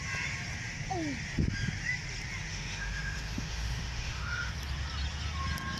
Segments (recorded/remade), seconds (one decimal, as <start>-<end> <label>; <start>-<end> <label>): 0.0-2.5 recorded; 2.5-4.5 remade; 4.5-5.8 recorded

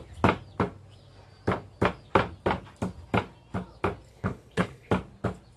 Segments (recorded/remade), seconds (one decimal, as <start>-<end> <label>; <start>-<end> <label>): 0.0-4.1 recorded; 4.1-4.9 remade; 4.9-5.6 recorded